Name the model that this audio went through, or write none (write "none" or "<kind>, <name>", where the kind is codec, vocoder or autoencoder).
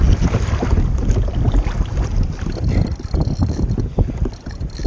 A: none